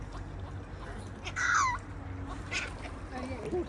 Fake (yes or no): no